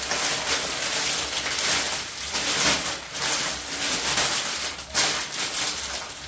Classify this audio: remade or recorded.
recorded